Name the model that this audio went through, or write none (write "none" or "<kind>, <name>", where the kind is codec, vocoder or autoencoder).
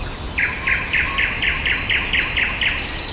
none